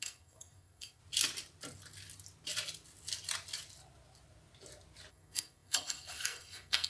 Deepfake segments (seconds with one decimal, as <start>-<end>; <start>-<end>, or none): 0.0-1.0; 5.1-6.9